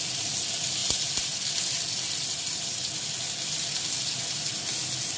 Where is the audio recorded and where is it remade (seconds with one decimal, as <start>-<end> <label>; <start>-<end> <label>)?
0.0-5.2 recorded